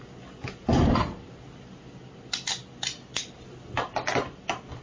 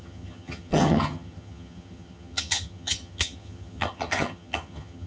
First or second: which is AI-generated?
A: second